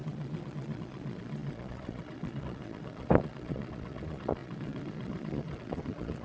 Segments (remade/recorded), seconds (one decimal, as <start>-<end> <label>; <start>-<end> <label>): 0.0-6.2 remade